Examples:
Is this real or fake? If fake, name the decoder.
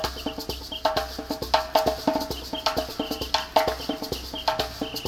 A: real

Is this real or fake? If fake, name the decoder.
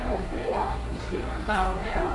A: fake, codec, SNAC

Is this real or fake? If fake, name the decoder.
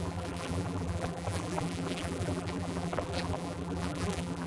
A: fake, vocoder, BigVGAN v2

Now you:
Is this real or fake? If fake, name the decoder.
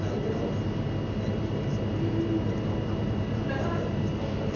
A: real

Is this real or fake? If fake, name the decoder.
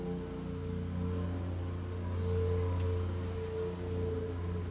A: real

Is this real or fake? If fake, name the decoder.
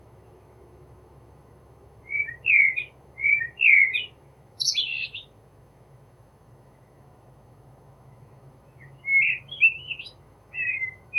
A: fake, autoencoder, DAC-VAE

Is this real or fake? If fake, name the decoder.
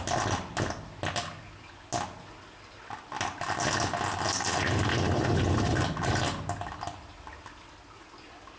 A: real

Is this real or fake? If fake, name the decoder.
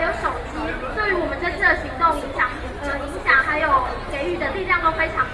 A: real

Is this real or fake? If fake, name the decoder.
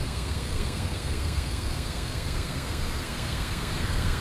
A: fake, codec, SNAC